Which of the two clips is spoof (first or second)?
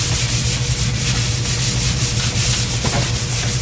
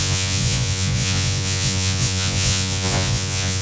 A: second